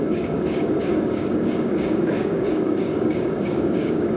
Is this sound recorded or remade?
remade